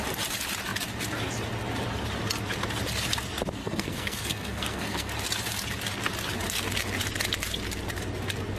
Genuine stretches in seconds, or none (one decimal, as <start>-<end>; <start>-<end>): 0.0-3.6; 5.1-8.6